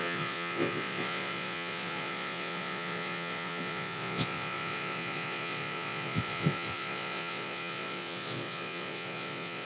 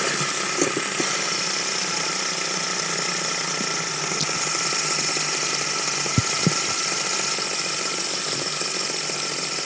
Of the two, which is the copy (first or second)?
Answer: first